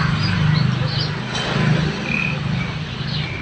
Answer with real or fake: real